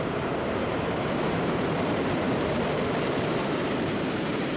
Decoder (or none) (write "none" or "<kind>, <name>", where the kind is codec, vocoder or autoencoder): vocoder, BigVGAN v2